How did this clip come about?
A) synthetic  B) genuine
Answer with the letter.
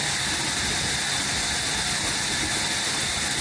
B